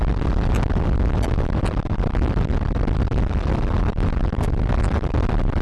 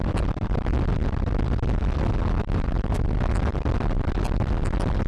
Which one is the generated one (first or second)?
first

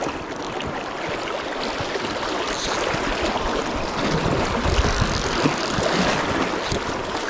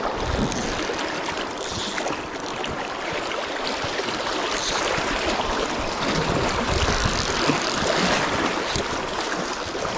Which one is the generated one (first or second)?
second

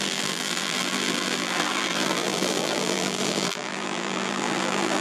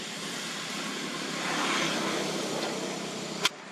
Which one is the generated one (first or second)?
first